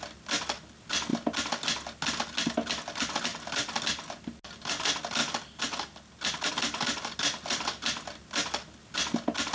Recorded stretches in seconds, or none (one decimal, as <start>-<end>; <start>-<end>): 0.0-9.5